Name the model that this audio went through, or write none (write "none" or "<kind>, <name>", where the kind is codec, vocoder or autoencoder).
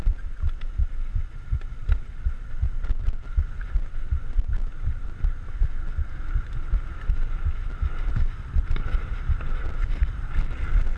none